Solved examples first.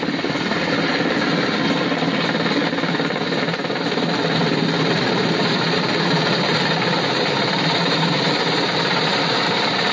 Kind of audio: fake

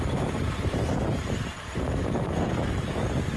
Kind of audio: fake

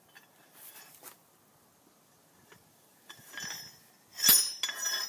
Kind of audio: real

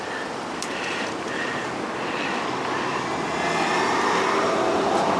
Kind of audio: fake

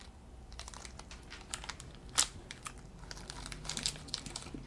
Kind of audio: fake